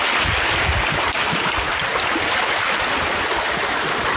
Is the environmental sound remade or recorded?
recorded